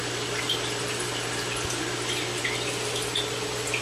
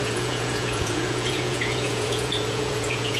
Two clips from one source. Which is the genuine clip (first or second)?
first